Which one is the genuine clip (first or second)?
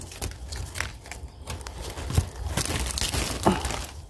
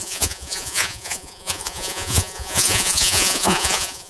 first